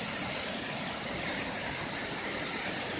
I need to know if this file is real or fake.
fake